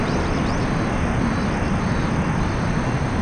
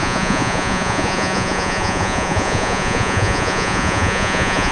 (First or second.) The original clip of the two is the first